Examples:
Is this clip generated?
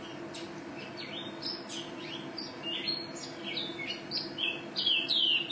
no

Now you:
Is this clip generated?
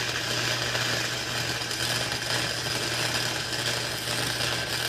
no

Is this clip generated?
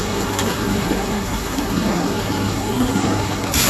yes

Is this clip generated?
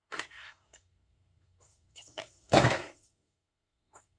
yes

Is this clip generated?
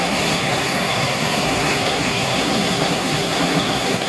yes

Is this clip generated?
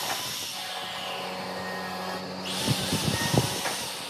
no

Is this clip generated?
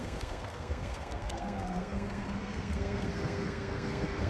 yes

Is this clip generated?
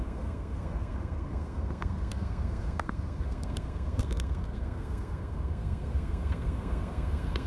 yes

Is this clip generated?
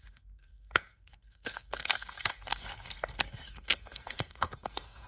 yes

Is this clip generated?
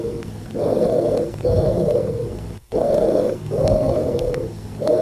yes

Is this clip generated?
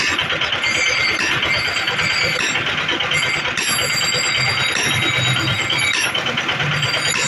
no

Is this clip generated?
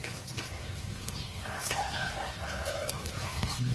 yes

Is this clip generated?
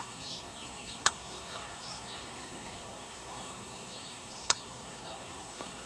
yes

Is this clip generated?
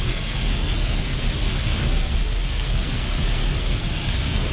yes